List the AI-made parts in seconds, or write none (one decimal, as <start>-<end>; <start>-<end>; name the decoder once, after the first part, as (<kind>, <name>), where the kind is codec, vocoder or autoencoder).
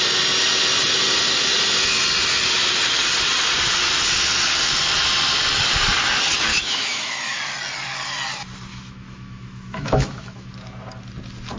6.5-7.4 (autoencoder, DAC-VAE); 8.7-10.5